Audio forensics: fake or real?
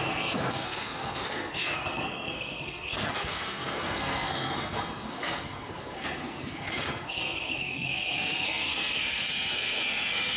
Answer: fake